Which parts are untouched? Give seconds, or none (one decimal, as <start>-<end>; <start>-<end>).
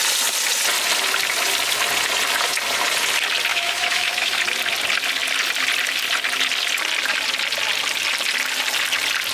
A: 0.0-3.5; 4.4-9.3